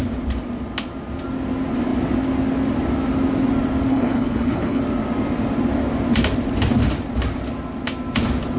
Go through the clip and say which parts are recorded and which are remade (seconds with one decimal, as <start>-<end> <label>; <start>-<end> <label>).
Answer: 0.0-3.9 recorded; 3.9-4.8 remade; 4.8-8.6 recorded